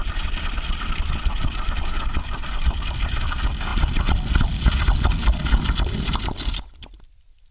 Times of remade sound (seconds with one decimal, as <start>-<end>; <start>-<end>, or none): 0.0-7.5